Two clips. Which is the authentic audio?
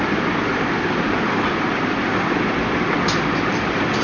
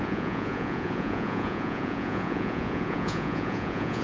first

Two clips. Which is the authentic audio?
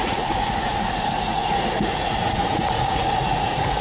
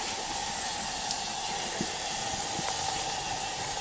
second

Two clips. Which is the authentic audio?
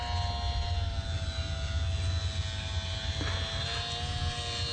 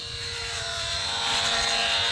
first